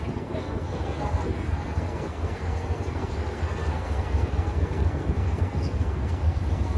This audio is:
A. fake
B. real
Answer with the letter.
A